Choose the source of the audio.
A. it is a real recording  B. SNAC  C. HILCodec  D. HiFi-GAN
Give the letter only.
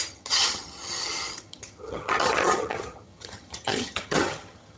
D